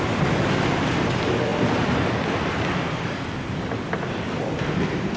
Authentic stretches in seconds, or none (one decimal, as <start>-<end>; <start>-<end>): 0.0-5.2